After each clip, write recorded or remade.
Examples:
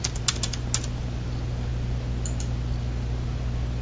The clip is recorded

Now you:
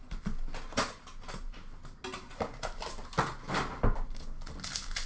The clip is recorded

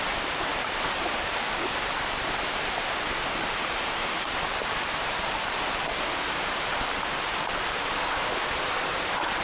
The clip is remade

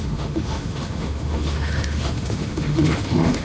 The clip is remade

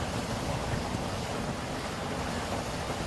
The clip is recorded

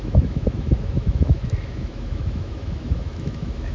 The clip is remade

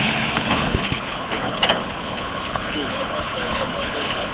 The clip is remade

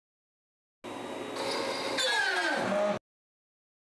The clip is recorded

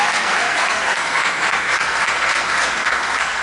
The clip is remade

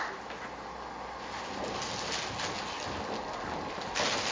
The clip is recorded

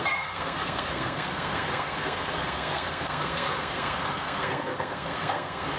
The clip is remade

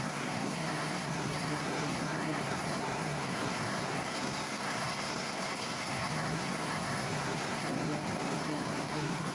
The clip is remade